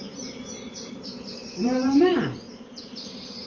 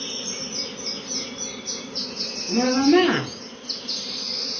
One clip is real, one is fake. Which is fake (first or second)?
first